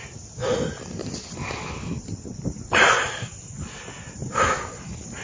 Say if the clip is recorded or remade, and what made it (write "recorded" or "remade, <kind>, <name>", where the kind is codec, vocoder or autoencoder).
recorded